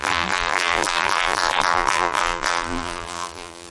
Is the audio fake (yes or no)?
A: yes